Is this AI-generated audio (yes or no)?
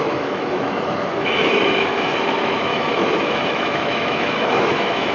yes